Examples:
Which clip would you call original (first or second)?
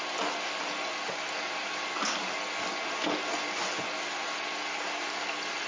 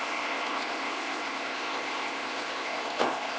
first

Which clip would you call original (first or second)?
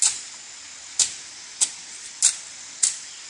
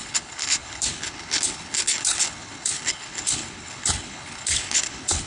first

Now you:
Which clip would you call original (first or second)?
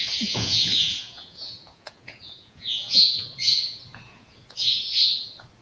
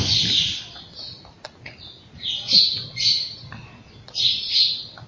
second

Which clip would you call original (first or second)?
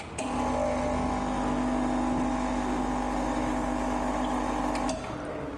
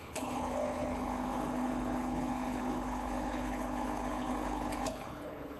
first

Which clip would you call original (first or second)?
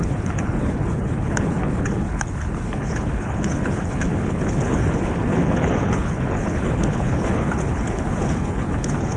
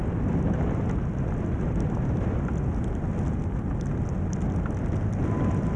second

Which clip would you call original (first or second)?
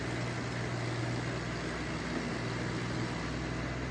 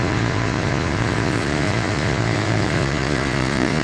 first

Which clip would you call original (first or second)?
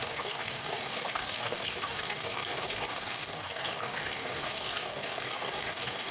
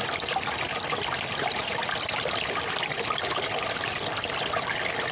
second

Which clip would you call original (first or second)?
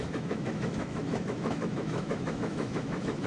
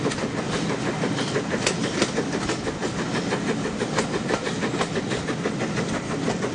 second